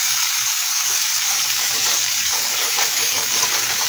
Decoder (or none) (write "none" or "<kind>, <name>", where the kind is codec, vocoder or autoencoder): codec, DAC